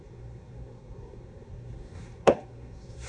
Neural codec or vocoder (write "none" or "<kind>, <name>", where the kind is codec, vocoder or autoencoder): codec, SNAC